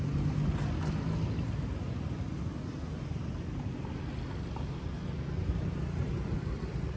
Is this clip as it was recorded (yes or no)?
yes